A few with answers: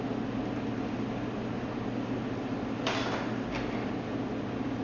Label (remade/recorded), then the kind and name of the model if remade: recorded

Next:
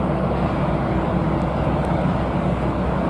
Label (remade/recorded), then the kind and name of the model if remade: remade, codec, DAC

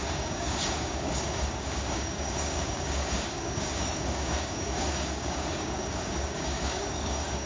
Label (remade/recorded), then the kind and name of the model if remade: remade, codec, DAC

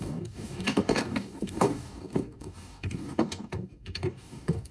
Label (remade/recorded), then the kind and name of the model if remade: remade, codec, DAC